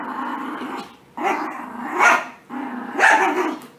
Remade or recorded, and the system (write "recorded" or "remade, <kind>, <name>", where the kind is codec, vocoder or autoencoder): recorded